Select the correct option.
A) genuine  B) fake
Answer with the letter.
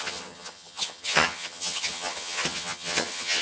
B